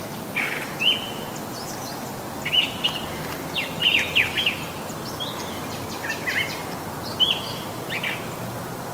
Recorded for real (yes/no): yes